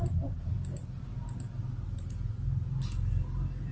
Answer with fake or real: real